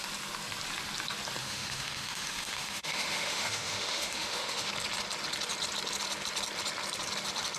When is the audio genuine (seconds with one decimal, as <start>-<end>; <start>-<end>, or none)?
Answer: 0.0-1.4; 4.7-7.6